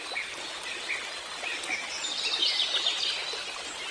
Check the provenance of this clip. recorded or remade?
recorded